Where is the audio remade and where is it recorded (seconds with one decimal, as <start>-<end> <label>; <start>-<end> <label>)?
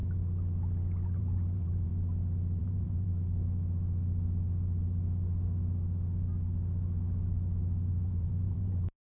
0.0-1.2 recorded; 1.2-1.9 remade; 1.9-2.6 recorded; 2.6-3.1 remade; 3.1-7.9 recorded; 7.9-9.1 remade